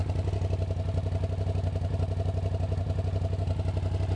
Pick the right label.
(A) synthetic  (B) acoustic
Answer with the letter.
B